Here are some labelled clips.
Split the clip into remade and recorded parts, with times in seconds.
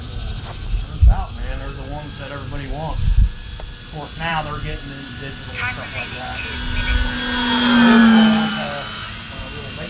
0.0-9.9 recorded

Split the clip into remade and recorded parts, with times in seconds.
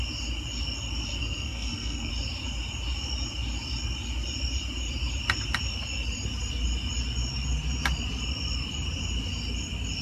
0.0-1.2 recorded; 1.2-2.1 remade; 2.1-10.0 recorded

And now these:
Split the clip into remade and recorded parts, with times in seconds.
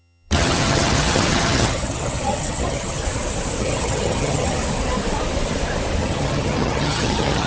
0.0-3.0 remade; 3.0-3.6 recorded; 3.6-4.6 remade; 4.6-6.0 recorded; 6.0-7.5 remade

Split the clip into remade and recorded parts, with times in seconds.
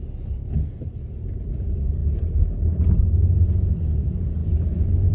0.0-5.1 recorded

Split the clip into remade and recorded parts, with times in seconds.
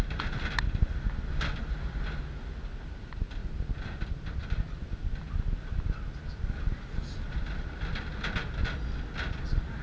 0.0-9.8 recorded